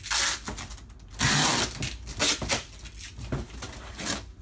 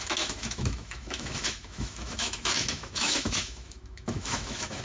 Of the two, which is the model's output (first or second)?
second